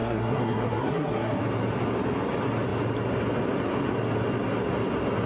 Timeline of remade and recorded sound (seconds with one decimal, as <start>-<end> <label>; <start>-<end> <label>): 0.0-1.4 remade; 1.4-5.3 recorded